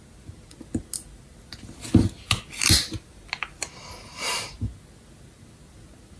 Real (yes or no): yes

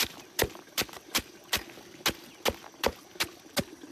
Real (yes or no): yes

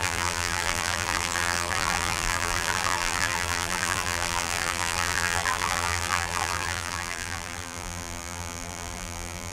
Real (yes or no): no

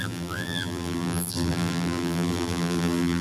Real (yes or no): no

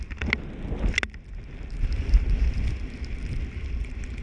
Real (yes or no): yes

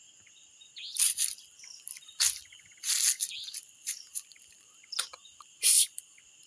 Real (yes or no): no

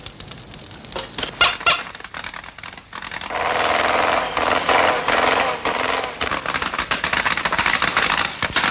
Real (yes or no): yes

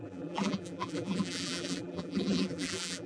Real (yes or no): no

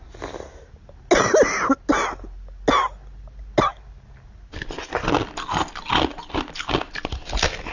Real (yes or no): yes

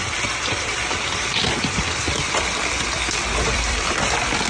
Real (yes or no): no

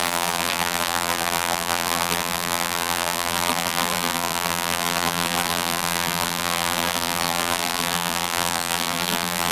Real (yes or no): no